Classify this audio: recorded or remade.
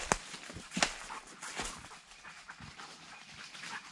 recorded